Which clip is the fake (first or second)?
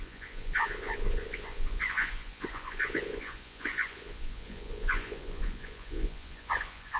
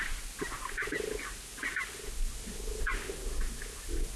first